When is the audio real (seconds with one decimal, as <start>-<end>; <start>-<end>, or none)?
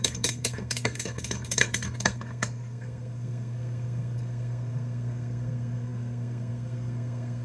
none